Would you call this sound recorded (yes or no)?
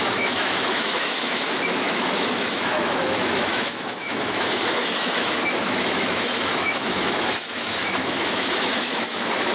no